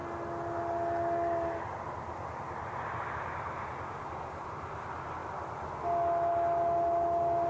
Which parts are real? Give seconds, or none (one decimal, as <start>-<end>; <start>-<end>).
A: 0.0-7.5